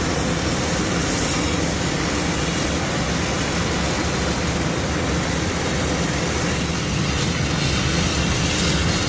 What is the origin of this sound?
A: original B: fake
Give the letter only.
A